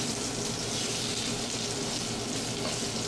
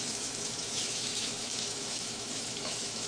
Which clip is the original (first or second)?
first